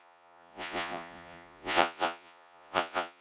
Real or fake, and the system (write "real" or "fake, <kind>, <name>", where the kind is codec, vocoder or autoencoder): fake, vocoder, Vocos